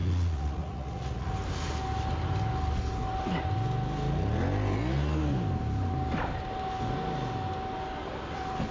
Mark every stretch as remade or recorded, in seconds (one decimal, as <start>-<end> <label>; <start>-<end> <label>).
0.0-1.3 remade; 1.3-8.7 recorded